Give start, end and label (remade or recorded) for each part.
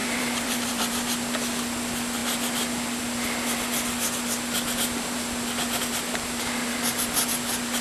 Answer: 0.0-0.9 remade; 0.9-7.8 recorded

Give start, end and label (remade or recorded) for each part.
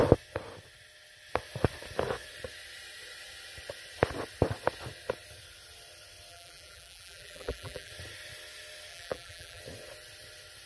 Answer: 0.0-6.3 recorded; 6.3-7.9 remade; 7.9-8.9 recorded; 8.9-9.6 remade; 9.6-10.7 recorded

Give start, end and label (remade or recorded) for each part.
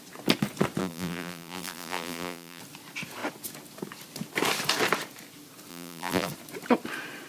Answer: 0.0-0.8 recorded; 0.8-2.6 remade; 2.6-5.7 recorded; 5.7-6.3 remade; 6.3-7.3 recorded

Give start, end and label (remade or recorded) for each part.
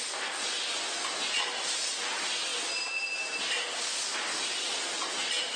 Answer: 0.0-5.6 recorded